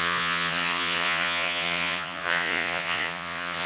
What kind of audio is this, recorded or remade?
remade